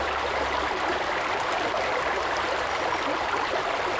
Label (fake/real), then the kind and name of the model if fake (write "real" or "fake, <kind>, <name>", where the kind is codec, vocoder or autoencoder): real